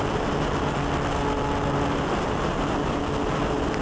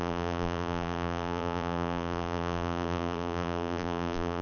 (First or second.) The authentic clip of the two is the first